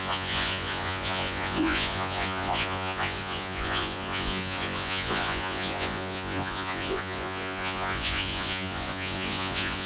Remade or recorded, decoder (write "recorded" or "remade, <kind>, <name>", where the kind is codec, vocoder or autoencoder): remade, vocoder, Vocos